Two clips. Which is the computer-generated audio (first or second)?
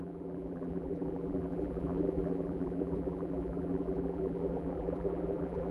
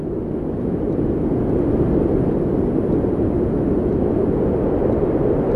first